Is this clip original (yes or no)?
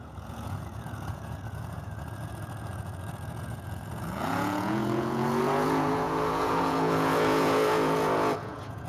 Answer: no